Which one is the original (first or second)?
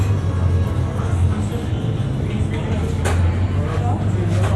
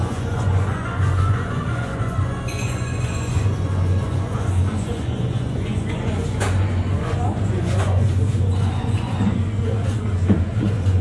first